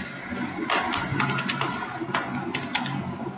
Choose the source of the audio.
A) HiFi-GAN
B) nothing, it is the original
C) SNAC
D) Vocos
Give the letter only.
B